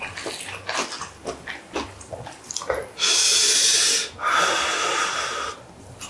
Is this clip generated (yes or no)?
no